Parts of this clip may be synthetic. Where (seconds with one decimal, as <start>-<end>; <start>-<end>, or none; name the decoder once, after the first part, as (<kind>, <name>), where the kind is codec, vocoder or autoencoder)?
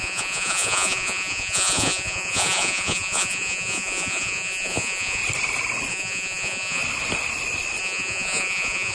0.0-5.2 (vocoder, Vocos); 5.9-6.8; 7.8-8.9